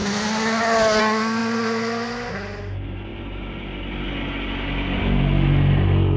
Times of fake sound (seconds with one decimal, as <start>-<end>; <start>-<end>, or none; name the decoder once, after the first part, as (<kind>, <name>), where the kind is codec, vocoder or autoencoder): none